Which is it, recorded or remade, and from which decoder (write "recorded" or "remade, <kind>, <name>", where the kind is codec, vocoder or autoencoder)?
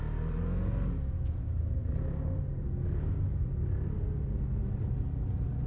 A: recorded